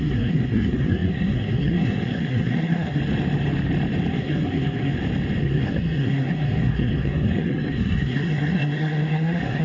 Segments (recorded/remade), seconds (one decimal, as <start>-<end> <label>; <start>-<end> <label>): 0.0-3.0 remade; 3.0-4.1 recorded; 4.1-4.9 remade; 4.9-5.4 recorded; 5.4-9.6 remade

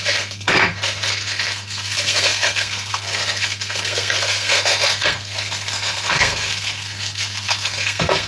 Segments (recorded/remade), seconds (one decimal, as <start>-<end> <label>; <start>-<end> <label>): 0.0-8.3 remade

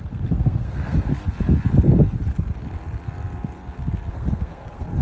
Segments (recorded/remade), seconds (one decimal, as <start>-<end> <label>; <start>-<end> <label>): 0.0-1.1 remade; 1.1-4.1 recorded; 4.1-5.0 remade

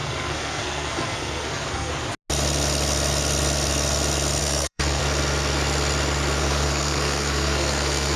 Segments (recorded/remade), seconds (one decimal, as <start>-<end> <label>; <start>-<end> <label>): 0.0-1.9 remade; 1.9-4.4 recorded; 4.4-5.0 remade; 5.0-6.4 recorded; 6.4-8.2 remade

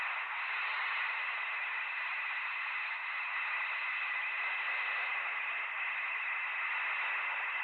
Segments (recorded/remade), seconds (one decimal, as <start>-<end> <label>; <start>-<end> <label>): 0.0-7.6 recorded

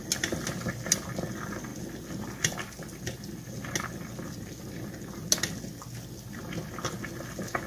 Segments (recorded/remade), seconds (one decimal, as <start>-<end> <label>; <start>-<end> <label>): 0.0-7.7 recorded

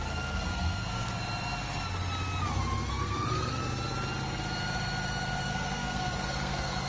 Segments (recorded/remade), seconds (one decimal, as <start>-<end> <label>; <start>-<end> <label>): 0.0-1.1 remade; 1.1-2.9 recorded; 2.9-3.6 remade; 3.6-5.5 recorded; 5.5-6.9 remade

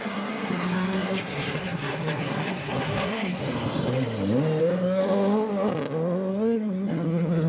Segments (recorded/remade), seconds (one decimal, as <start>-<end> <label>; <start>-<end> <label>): 0.0-3.4 remade; 3.4-4.6 recorded; 4.6-5.0 remade; 5.0-6.3 recorded; 6.3-7.5 remade